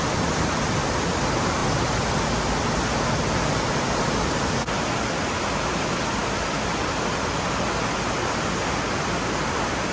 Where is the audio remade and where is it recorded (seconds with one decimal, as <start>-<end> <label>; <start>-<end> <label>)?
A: 0.0-9.9 recorded